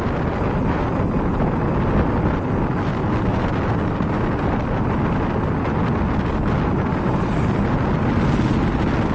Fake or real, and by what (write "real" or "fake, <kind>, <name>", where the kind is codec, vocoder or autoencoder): real